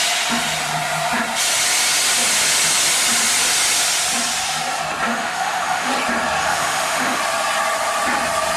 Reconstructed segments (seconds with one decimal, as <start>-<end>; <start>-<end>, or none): 5.1-5.9; 6.4-7.2